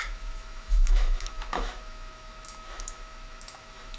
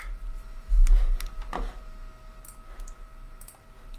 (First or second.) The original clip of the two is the second